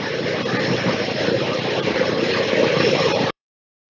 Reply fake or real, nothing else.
fake